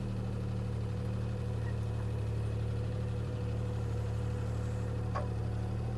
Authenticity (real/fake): fake